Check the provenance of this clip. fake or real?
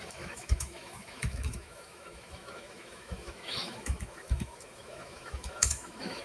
fake